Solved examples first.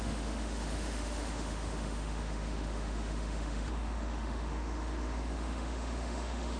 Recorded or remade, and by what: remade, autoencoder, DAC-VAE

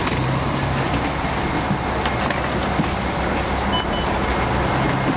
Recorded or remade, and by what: recorded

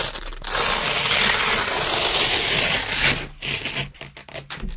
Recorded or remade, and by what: recorded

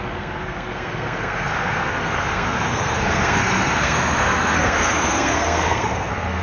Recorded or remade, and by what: remade, codec, SNAC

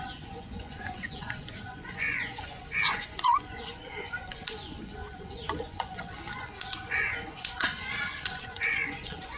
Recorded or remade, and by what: remade, vocoder, Vocos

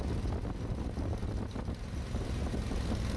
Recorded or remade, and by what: recorded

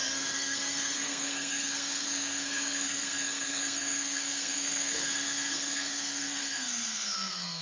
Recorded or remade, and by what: remade, codec, SNAC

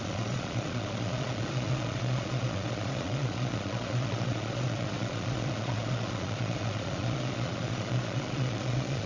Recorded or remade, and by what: remade, vocoder, Vocos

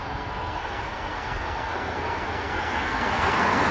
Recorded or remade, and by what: remade, codec, SNAC